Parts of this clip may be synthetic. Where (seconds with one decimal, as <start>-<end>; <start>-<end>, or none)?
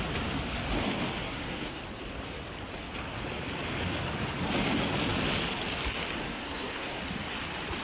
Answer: 1.2-1.8; 6.2-7.0